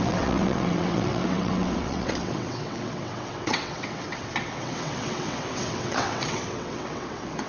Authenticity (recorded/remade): remade